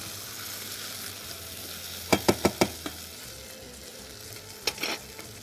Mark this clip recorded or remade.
recorded